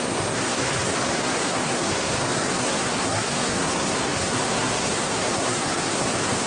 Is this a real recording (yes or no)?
no